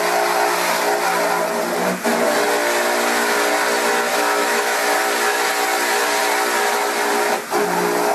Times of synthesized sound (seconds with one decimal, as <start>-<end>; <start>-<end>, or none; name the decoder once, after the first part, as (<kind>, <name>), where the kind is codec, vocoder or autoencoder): 4.1-5.0 (autoencoder, DAC-VAE)